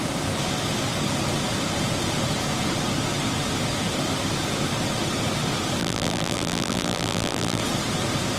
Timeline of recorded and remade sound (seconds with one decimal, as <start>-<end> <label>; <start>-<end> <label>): 0.0-5.8 recorded; 5.8-7.6 remade; 7.6-8.4 recorded